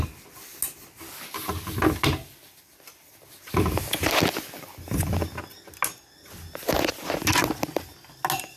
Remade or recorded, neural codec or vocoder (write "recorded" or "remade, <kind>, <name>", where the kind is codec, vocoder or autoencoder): recorded